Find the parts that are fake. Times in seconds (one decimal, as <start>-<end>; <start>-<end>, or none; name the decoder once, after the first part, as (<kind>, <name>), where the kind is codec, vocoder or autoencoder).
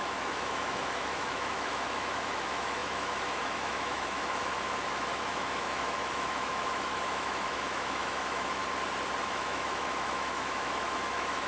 0.0-8.6 (autoencoder, DAC-VAE); 9.2-11.5